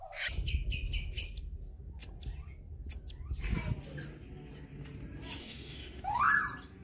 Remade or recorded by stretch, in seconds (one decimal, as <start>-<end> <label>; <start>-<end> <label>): 0.0-5.4 recorded; 5.4-6.2 remade; 6.2-6.8 recorded